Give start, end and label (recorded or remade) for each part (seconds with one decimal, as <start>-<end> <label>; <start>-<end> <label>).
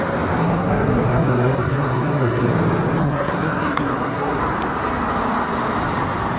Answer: 0.0-0.4 recorded; 0.4-2.5 remade; 2.5-3.0 recorded; 3.0-4.4 remade; 4.4-6.4 recorded